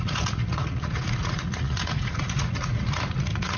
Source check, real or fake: fake